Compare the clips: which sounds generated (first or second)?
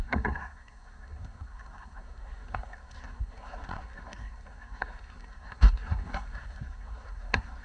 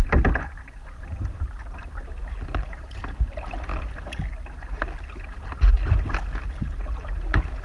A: first